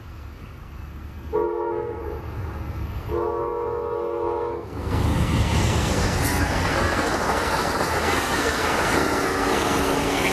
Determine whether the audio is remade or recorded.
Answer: remade